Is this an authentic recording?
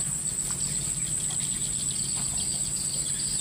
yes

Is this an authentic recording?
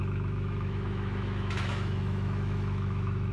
no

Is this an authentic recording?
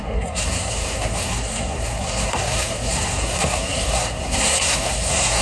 no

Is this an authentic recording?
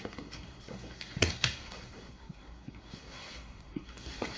no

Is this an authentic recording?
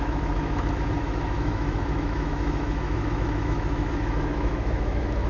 no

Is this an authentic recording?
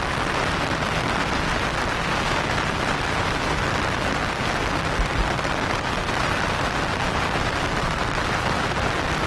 yes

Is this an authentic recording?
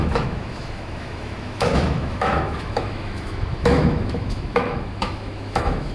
no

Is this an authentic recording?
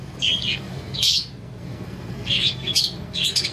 no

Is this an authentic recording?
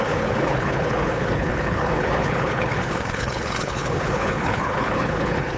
no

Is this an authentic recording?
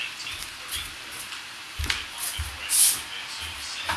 yes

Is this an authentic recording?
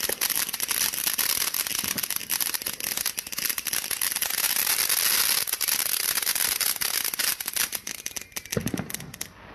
yes